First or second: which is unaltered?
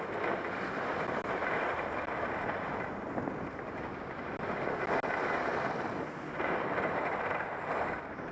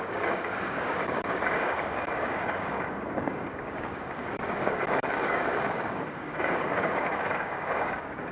first